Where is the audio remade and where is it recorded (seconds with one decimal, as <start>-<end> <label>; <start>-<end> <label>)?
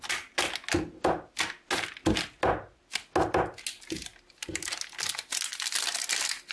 0.0-6.5 recorded